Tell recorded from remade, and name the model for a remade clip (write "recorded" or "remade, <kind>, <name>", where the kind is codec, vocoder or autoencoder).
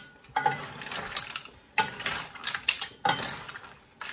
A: remade, vocoder, BigVGAN v2